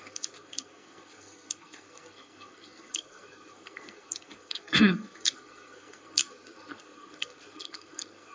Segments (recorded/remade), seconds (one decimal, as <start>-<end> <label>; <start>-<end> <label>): 0.0-8.3 remade